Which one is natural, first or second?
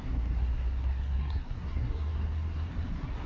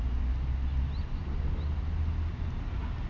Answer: second